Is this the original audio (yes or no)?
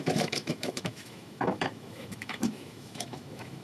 no